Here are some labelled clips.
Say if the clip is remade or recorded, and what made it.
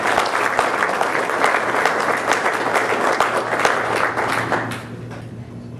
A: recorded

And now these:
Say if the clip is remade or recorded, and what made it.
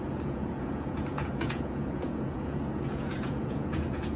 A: remade, vocoder, Vocos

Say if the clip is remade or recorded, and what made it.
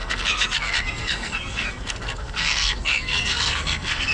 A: remade, codec, SNAC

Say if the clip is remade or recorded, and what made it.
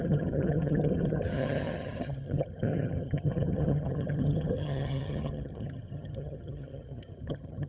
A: remade, vocoder, HiFi-GAN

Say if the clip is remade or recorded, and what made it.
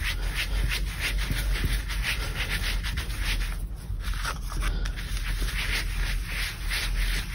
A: recorded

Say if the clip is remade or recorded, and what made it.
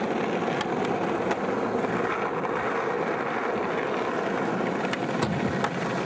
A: recorded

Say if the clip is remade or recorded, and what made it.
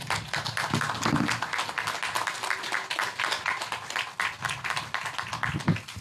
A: recorded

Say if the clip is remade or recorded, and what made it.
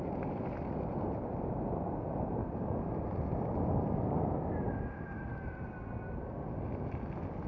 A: recorded